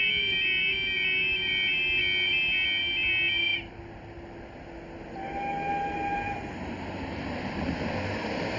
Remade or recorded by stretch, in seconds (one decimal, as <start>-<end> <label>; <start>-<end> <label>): 0.0-8.6 recorded

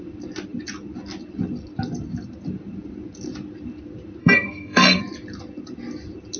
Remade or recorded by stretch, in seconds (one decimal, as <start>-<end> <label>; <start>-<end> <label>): 0.0-4.2 recorded; 4.2-5.0 remade; 5.0-6.4 recorded

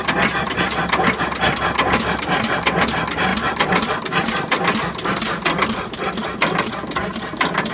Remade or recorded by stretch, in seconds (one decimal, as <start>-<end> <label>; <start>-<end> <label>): 0.0-7.7 recorded

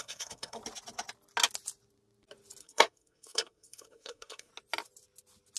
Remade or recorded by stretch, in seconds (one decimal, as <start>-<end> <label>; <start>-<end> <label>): 0.0-0.6 remade; 0.6-2.6 recorded; 2.6-4.5 remade; 4.5-5.6 recorded

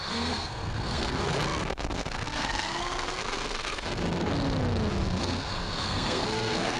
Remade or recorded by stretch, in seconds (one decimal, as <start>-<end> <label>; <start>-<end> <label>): 0.0-4.3 remade; 4.3-4.9 recorded; 4.9-6.8 remade

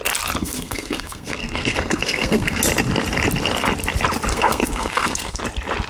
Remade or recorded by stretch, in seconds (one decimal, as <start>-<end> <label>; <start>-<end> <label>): 0.0-0.4 recorded; 0.4-2.6 remade; 2.6-4.3 recorded; 4.3-5.4 remade; 5.4-5.9 recorded